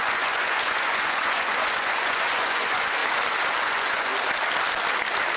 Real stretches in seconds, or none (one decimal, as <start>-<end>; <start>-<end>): 3.0-3.6; 4.1-5.4